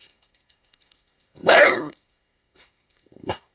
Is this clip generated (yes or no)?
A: yes